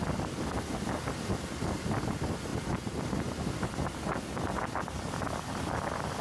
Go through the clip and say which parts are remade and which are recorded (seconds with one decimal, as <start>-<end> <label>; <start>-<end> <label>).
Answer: 0.0-6.2 recorded